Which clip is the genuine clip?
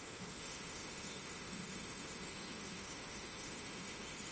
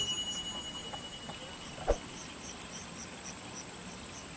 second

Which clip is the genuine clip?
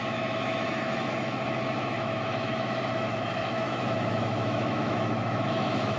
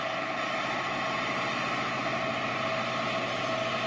second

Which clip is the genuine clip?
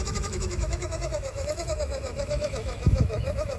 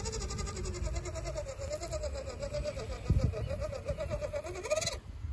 second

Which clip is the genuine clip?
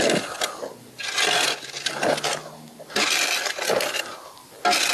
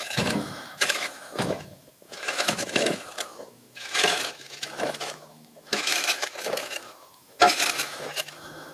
first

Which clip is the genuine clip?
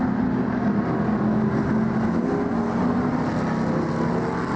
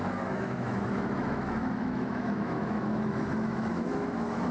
first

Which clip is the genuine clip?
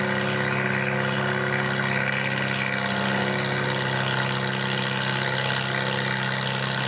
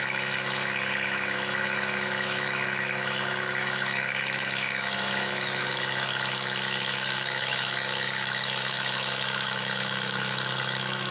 first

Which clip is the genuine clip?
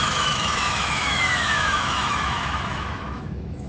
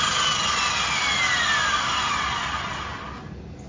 second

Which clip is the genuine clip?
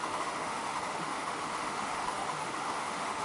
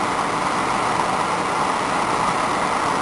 second